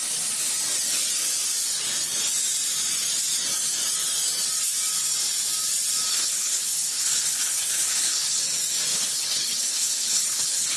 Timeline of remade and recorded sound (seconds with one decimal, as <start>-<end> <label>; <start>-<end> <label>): 0.0-6.1 recorded; 6.1-8.4 remade; 8.4-8.9 recorded; 8.9-10.8 remade